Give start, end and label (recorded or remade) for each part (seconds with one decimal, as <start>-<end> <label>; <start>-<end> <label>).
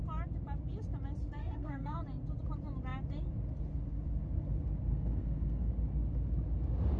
0.0-1.4 recorded; 1.4-2.0 remade; 2.0-4.9 recorded; 4.9-5.7 remade; 5.7-7.0 recorded